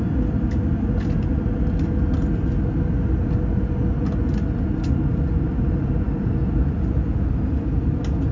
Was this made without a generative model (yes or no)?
yes